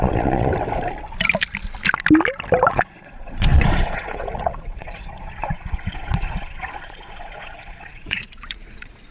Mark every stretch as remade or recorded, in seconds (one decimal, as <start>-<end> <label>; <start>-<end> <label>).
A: 0.0-0.5 remade; 0.5-2.7 recorded; 2.7-9.1 remade